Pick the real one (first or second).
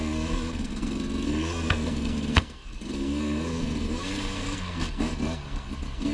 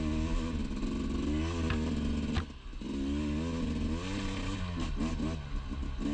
second